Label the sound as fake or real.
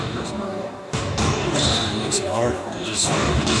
fake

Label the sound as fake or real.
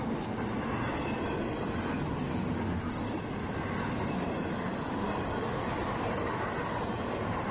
real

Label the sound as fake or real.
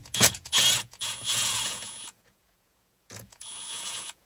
fake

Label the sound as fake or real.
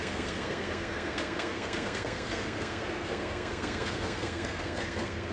fake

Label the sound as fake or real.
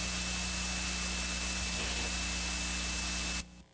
real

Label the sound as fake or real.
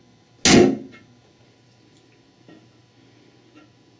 real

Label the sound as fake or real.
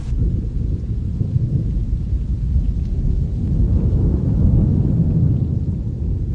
real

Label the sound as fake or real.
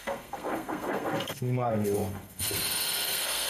fake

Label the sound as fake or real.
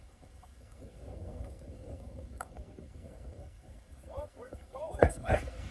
fake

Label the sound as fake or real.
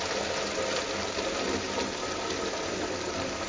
real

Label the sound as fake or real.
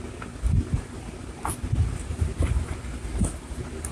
real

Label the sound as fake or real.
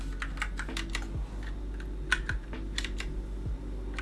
real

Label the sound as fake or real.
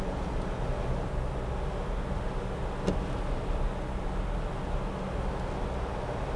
real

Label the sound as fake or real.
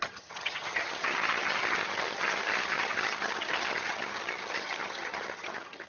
fake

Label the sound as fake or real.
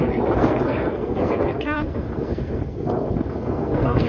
fake